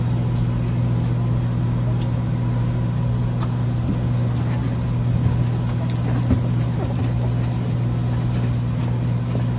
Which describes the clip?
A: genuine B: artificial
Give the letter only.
A